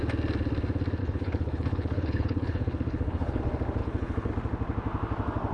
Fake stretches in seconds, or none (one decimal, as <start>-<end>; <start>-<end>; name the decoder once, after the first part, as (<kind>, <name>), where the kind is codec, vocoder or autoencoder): 1.0-3.4 (codec, HILCodec); 3.8-4.3